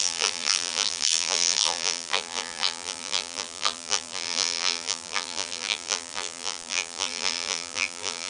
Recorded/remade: remade